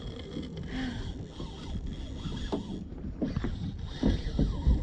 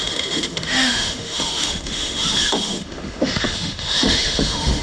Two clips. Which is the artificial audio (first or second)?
second